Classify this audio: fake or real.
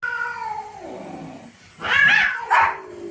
real